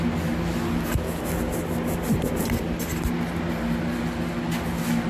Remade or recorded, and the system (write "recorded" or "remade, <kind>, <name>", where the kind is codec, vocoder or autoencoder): recorded